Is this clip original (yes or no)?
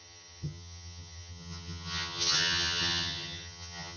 no